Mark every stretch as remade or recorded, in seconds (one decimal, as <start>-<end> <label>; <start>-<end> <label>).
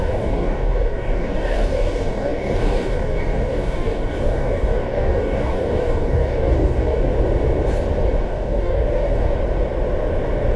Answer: 0.0-7.1 remade; 7.1-8.2 recorded; 8.2-9.3 remade; 9.3-10.6 recorded